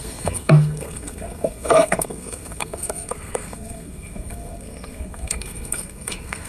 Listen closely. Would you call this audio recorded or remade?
remade